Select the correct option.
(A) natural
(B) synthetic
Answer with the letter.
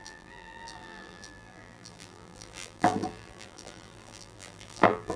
B